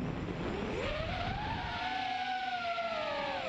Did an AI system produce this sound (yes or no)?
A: no